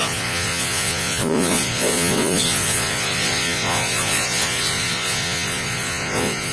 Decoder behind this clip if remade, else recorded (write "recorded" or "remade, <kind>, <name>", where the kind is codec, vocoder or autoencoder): remade, vocoder, Vocos